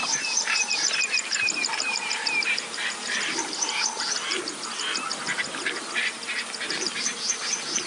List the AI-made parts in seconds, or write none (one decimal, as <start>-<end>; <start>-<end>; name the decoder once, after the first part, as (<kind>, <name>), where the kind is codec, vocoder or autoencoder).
0.4-3.7 (vocoder, BigVGAN v2)